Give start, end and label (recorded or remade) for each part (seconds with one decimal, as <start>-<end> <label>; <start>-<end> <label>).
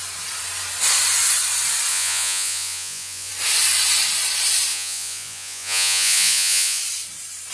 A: 0.0-1.9 recorded; 1.9-3.3 remade; 3.3-4.7 recorded; 4.7-6.8 remade; 6.8-7.5 recorded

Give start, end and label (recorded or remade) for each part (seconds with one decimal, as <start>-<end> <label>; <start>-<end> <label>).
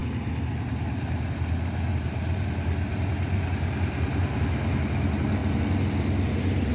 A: 0.0-1.9 recorded; 1.9-4.4 remade; 4.4-6.7 recorded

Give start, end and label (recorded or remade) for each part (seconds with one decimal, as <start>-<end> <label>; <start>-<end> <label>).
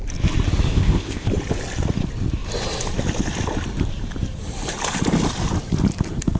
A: 0.0-0.7 recorded; 0.7-1.3 remade; 1.3-6.4 recorded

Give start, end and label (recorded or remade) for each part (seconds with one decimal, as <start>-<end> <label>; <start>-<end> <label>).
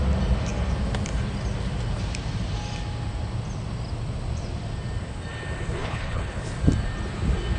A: 0.0-5.8 recorded; 5.8-6.5 remade; 6.5-7.6 recorded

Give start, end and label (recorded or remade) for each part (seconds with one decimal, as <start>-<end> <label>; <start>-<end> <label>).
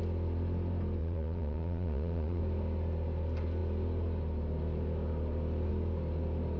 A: 0.0-1.0 recorded; 1.0-2.4 remade; 2.4-6.6 recorded